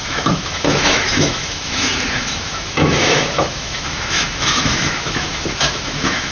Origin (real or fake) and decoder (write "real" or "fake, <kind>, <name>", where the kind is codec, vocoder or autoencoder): fake, autoencoder, DAC-VAE